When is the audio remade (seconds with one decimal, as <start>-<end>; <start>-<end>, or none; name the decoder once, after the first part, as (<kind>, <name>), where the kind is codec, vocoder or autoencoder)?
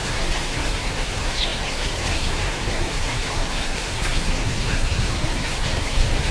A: 0.0-6.3 (codec, SNAC)